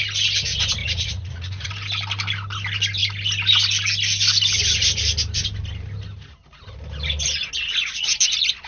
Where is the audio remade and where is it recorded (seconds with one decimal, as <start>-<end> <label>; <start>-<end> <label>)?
0.0-0.8 recorded; 0.8-1.7 remade; 1.7-8.7 recorded